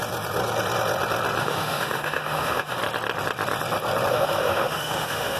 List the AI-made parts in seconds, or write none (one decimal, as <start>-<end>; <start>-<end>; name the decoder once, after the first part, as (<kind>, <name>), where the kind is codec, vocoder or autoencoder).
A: 1.4-2.8 (autoencoder, DAC-VAE); 4.1-5.4